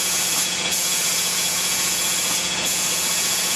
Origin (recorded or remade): remade